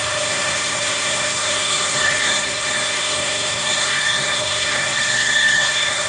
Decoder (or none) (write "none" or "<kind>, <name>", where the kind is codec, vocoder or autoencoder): codec, SNAC